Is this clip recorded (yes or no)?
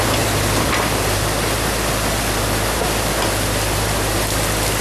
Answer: yes